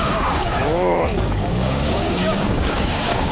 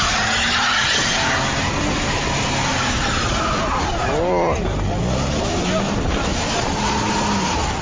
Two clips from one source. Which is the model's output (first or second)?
first